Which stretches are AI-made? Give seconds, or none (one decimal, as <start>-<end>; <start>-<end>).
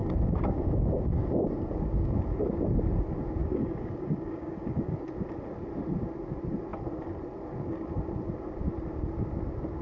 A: 0.0-2.2; 3.4-4.9